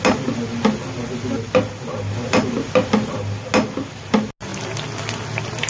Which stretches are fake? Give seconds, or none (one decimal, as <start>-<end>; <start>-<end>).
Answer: none